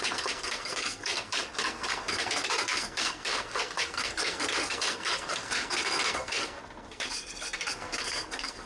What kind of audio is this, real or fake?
fake